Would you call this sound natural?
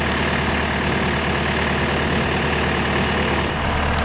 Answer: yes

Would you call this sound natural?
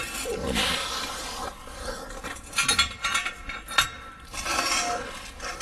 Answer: yes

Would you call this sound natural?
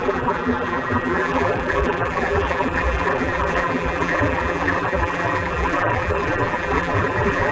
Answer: no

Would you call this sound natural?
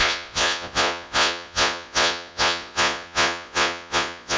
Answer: no